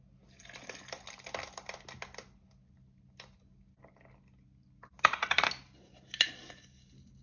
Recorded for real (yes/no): yes